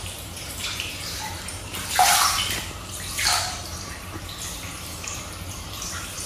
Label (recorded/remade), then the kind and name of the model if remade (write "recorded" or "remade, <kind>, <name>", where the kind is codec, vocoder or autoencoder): remade, vocoder, BigVGAN v2